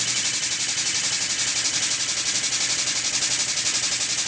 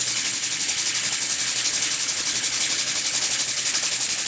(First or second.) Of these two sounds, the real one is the first